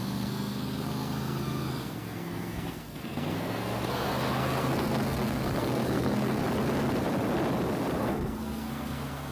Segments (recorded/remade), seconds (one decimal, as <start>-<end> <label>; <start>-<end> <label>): 0.0-6.4 remade; 6.4-8.0 recorded; 8.0-9.3 remade